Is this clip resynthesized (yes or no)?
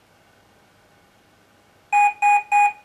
no